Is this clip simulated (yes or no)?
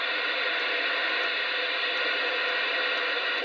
no